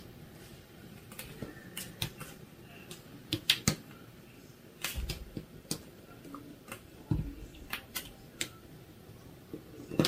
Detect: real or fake real